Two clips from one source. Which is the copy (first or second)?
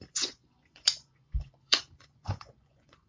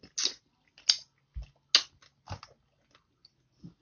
first